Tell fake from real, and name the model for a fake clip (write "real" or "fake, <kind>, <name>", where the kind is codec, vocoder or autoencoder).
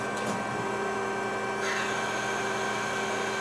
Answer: real